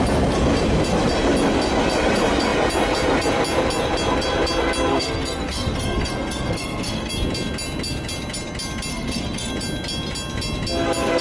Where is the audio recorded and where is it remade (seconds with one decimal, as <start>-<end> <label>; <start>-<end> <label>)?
0.0-4.9 recorded; 4.9-7.1 remade; 7.1-8.9 recorded; 8.9-9.5 remade; 9.5-11.2 recorded